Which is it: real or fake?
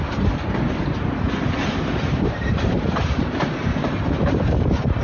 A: fake